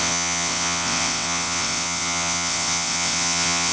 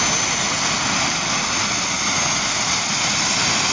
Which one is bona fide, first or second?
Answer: second